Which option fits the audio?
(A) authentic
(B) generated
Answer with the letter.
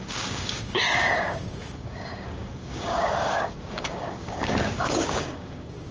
B